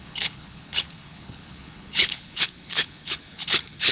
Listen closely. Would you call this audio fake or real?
fake